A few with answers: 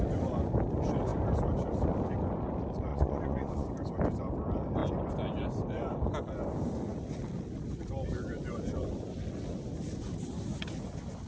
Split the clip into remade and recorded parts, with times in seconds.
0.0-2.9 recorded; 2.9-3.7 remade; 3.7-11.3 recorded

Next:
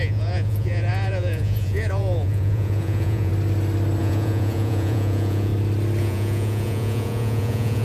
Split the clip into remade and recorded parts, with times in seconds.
0.0-3.3 remade; 3.3-4.0 recorded; 4.0-5.5 remade; 5.5-6.0 recorded; 6.0-7.8 remade

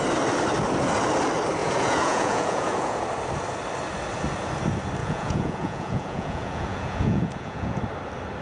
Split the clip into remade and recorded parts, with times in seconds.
0.0-1.6 recorded; 1.6-3.0 remade; 3.0-5.0 recorded; 5.0-7.8 remade; 7.8-8.4 recorded

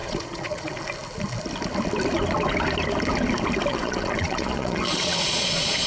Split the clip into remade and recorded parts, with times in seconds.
0.0-0.7 remade; 0.7-3.7 recorded; 3.7-5.9 remade

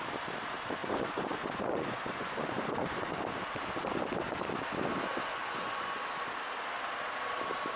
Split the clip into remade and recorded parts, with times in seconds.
0.0-0.8 recorded; 0.8-3.2 remade; 3.2-5.3 recorded; 5.3-6.0 remade; 6.0-7.8 recorded

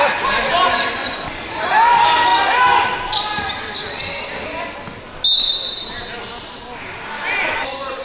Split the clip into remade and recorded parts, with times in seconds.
0.0-1.0 recorded; 1.0-1.7 remade; 1.7-8.0 recorded